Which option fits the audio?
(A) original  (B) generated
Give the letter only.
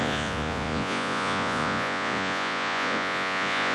B